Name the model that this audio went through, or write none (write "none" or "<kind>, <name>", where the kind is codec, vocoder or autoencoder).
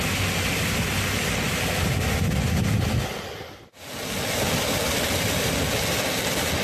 none